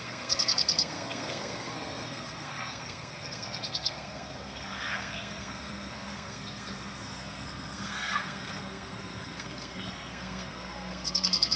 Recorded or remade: remade